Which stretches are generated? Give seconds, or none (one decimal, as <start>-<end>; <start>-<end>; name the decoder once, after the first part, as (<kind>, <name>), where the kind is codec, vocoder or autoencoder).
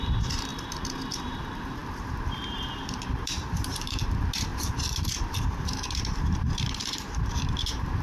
0.0-0.5 (vocoder, BigVGAN v2); 1.1-8.0